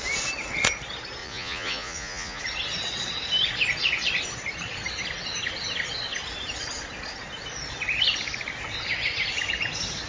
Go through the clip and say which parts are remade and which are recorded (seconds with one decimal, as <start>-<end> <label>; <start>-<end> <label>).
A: 0.0-1.2 recorded; 1.2-2.4 remade; 2.4-10.1 recorded